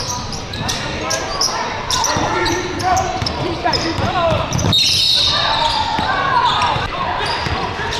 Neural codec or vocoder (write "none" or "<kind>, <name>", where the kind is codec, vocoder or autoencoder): vocoder, BigVGAN v2